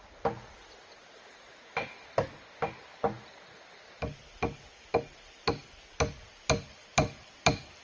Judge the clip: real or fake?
real